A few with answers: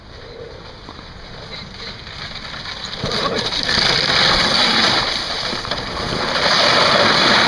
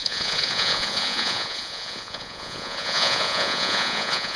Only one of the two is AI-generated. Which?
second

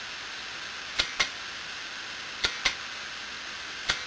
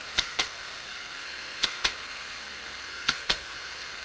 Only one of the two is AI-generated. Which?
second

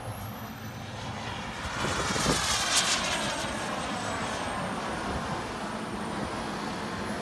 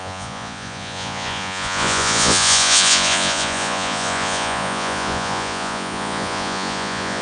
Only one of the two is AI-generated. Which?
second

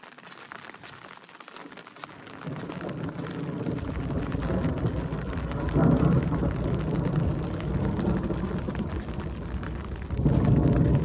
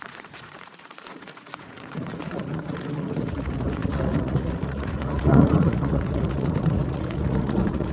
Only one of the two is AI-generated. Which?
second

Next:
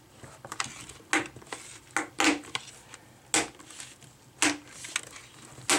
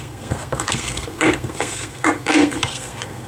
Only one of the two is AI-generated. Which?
second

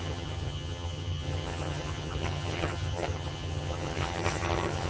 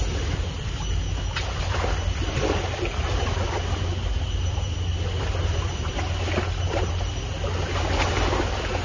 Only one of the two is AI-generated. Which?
first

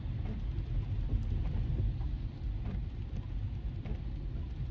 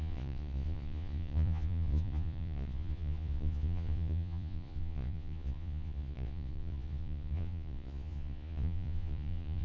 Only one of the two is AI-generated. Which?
second